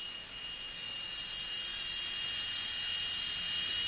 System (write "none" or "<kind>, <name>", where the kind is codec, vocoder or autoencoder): none